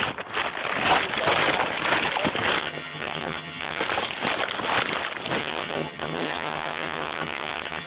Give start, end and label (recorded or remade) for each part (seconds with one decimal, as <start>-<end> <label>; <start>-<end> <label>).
0.0-2.6 recorded; 2.6-3.8 remade; 3.8-5.4 recorded; 5.4-7.9 remade